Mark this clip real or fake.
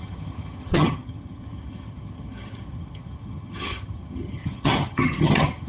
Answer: fake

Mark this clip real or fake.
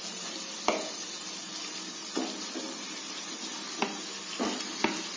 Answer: real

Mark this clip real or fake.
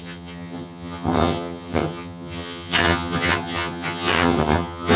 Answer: fake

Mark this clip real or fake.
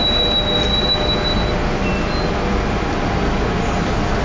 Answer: real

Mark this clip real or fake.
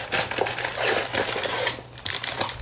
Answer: real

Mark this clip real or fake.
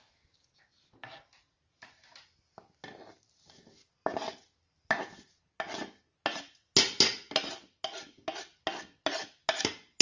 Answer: real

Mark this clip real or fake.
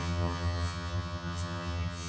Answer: fake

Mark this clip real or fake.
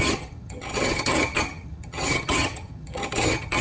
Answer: fake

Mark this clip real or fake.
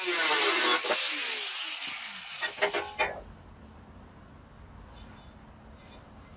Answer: real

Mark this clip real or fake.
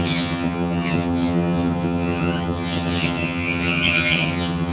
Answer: fake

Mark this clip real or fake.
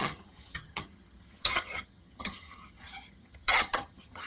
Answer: fake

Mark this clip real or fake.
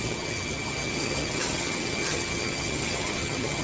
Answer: fake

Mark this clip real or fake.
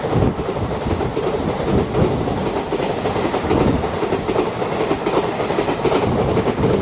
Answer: real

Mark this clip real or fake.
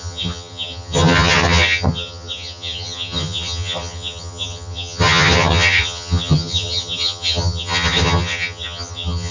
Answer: fake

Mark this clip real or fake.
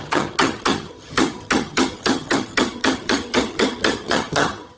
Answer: fake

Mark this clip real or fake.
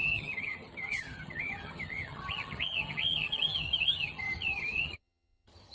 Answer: fake